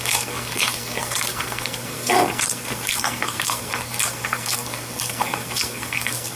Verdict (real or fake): fake